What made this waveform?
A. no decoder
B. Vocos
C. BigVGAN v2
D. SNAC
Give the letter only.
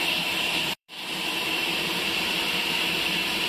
C